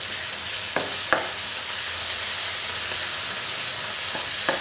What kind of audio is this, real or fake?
real